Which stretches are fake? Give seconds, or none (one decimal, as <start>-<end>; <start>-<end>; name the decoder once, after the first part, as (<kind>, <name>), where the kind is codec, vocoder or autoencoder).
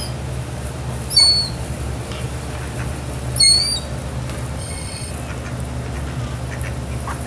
4.6-5.1 (vocoder, WaveNeXt)